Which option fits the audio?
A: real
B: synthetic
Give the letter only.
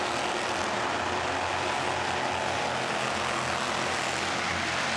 A